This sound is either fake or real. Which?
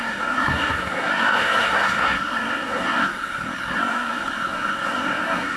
fake